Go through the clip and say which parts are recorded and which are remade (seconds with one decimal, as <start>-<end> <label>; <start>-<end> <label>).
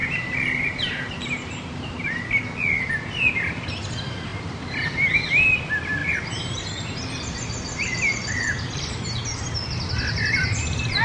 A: 0.0-2.2 remade; 2.2-6.0 recorded; 6.0-9.4 remade; 9.4-11.0 recorded